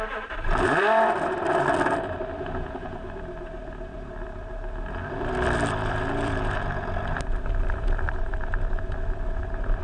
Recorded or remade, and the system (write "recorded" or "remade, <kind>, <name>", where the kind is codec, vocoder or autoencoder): remade, vocoder, BigVGAN v2